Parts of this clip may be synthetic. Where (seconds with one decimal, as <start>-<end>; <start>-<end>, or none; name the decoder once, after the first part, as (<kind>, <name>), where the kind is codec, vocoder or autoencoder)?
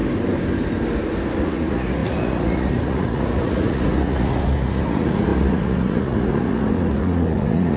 1.4-7.8 (vocoder, Vocos)